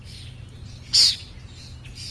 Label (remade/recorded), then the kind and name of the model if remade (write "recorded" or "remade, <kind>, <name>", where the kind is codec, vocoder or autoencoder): recorded